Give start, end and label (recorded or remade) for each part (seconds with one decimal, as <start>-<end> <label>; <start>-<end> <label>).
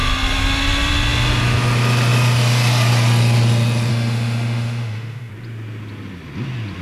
0.0-3.9 recorded; 3.9-5.3 remade; 5.3-6.8 recorded